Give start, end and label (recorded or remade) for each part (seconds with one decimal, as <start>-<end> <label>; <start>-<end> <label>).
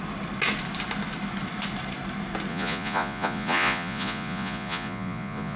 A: 0.0-2.5 recorded; 2.5-5.6 remade